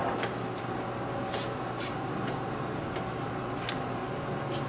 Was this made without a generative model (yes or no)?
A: yes